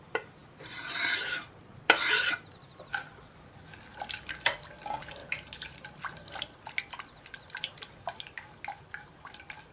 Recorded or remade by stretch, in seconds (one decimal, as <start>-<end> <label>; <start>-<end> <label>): 0.0-9.7 recorded